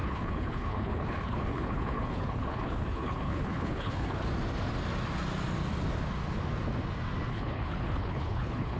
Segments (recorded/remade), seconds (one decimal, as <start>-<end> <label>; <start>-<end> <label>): 0.0-4.3 remade; 4.3-7.3 recorded; 7.3-8.8 remade